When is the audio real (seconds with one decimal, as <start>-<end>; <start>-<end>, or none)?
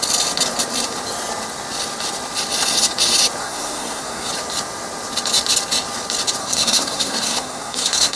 0.0-3.4; 4.3-6.4